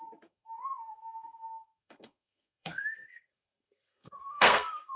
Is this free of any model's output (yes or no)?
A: no